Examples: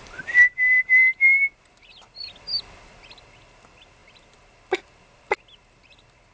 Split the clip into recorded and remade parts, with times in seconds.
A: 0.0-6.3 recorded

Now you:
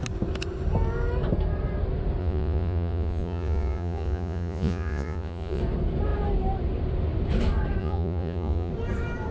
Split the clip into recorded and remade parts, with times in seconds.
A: 0.0-2.2 recorded; 2.2-5.6 remade; 5.6-7.8 recorded; 7.8-8.7 remade; 8.7-9.3 recorded